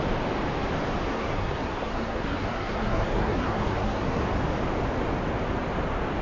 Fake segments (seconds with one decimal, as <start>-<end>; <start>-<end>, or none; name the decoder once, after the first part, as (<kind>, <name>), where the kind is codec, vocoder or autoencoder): 1.1-4.2 (codec, SNAC)